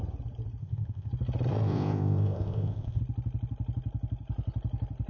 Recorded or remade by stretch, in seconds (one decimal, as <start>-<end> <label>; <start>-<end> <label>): 0.0-0.6 recorded; 0.6-1.1 remade; 1.1-1.5 recorded; 1.5-3.0 remade; 3.0-5.1 recorded